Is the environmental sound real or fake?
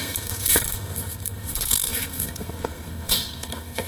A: fake